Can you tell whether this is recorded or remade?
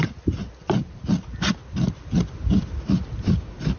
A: recorded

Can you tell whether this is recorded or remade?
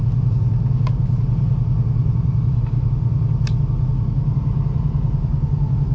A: recorded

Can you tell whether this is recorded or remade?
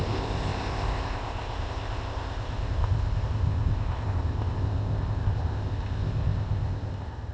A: remade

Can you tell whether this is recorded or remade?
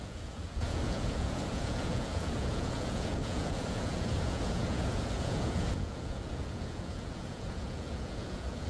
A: remade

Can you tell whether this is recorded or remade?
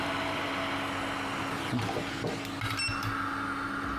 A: recorded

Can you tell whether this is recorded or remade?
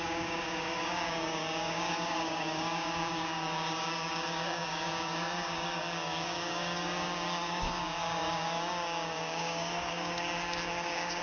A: remade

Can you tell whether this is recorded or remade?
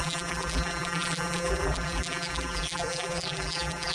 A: remade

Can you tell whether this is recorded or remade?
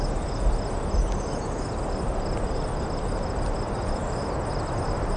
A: recorded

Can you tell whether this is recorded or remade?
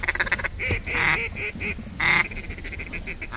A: recorded